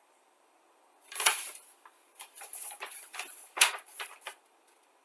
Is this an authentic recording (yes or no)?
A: no